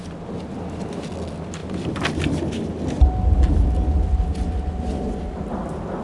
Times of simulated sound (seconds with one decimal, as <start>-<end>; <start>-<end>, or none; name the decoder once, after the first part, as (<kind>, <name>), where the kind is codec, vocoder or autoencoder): none